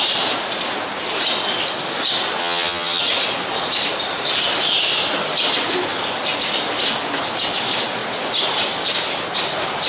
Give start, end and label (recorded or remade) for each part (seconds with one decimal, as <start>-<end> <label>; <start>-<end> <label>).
0.0-2.4 recorded; 2.4-3.0 remade; 3.0-9.9 recorded